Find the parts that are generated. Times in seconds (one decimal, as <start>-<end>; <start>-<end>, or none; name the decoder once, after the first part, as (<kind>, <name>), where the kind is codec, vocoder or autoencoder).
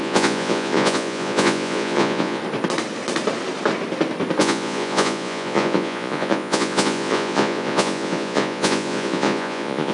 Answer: 0.0-2.4 (vocoder, Vocos); 4.4-9.9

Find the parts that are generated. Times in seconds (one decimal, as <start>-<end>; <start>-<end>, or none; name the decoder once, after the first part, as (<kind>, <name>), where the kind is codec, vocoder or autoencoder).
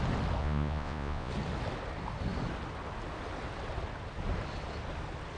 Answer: 0.4-1.3 (vocoder, Vocos)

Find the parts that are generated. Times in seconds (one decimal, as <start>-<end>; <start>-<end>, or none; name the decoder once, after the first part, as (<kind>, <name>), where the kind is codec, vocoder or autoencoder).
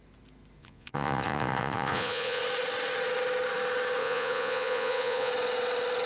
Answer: 0.6-2.4 (vocoder, Vocos); 4.0-5.3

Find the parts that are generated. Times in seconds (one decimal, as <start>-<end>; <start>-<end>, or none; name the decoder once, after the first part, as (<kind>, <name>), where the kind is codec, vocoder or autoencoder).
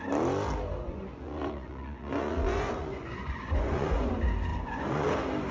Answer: 0.8-4.1 (vocoder, Vocos); 4.5-5.1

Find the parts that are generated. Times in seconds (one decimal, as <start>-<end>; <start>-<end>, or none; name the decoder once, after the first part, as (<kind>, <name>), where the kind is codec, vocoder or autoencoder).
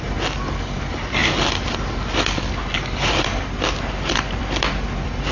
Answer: none